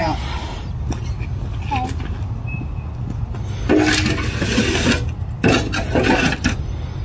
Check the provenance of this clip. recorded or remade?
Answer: recorded